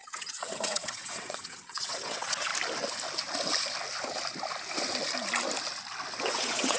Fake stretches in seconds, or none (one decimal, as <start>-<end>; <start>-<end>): 0.0-2.5; 6.2-6.8